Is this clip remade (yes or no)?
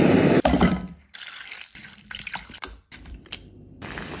yes